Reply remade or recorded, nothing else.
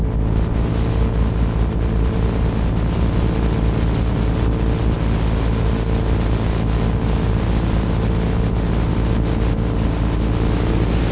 recorded